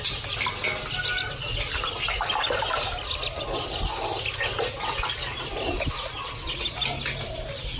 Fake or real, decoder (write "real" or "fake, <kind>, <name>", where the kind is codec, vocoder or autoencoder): real